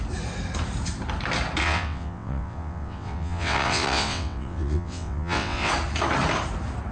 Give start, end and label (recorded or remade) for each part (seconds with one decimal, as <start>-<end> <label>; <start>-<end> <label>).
0.0-1.6 recorded; 1.6-5.7 remade; 5.7-6.9 recorded